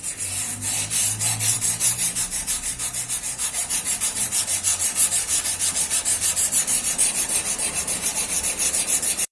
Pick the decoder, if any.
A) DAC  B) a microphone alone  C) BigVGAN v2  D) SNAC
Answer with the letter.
C